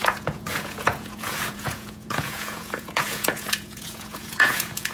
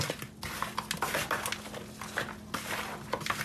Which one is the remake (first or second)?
first